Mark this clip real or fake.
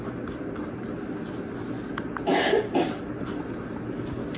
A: real